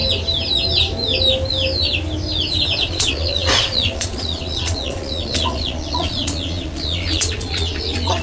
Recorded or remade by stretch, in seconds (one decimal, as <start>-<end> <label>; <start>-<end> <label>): 0.0-2.8 recorded; 2.8-8.2 remade